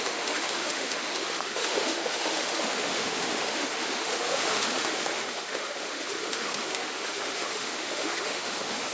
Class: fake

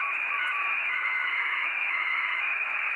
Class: fake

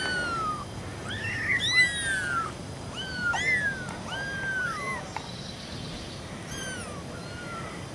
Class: real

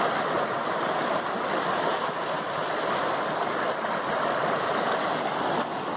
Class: real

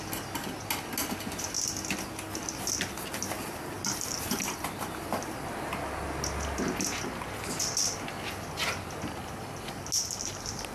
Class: real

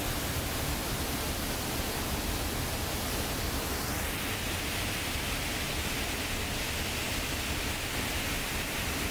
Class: real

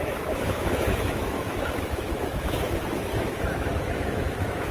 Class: fake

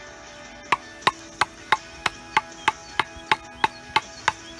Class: real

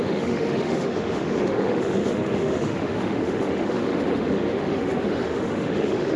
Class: fake